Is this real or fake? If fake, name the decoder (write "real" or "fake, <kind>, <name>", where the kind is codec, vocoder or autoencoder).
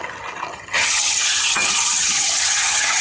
fake, vocoder, HiFi-GAN